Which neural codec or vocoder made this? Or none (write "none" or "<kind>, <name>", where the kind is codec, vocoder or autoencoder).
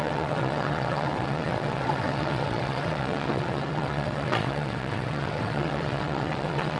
vocoder, WaveNeXt